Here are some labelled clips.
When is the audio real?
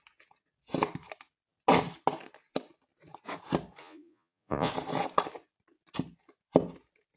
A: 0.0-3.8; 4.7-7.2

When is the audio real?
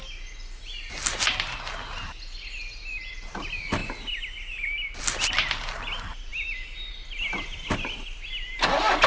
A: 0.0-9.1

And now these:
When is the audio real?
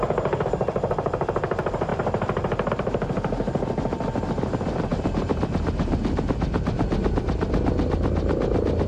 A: 0.0-8.9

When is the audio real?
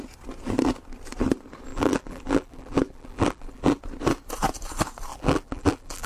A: 0.0-1.7; 3.8-5.1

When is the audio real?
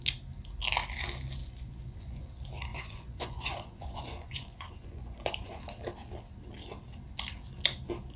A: 0.0-1.4; 2.2-2.7; 5.6-8.2